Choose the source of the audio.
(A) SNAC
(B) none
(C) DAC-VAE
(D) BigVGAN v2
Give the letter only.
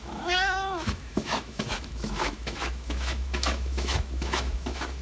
C